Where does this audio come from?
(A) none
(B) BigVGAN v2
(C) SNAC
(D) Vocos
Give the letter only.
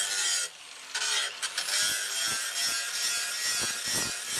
A